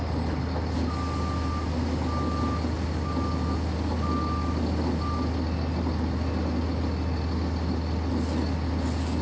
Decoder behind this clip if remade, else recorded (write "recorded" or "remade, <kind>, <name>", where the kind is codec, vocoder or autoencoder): recorded